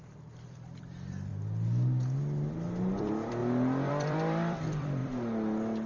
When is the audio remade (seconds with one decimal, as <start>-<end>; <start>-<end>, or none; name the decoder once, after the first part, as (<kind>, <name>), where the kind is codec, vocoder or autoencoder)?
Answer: 0.0-1.3 (vocoder, BigVGAN v2); 3.0-3.4; 3.9-5.0